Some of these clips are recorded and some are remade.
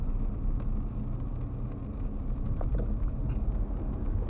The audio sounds recorded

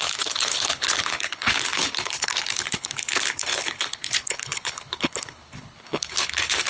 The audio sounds remade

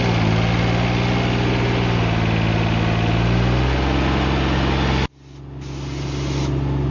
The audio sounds recorded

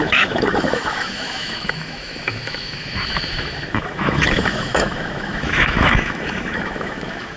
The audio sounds remade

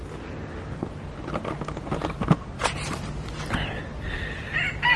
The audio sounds recorded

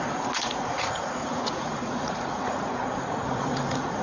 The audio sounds remade